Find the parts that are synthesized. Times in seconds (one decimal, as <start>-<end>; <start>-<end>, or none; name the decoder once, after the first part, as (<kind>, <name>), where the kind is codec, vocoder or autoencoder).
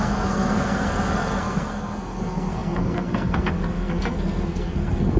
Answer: 0.0-5.2 (codec, SNAC)